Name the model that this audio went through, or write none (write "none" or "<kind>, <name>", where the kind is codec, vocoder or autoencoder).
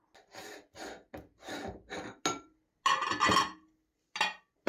none